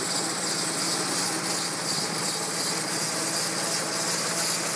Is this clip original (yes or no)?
yes